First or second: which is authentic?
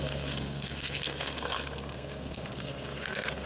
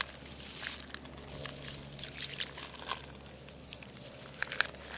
second